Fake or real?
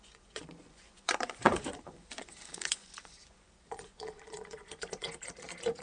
fake